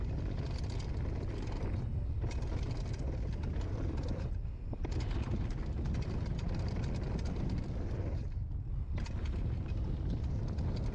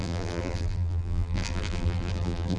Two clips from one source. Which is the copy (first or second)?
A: second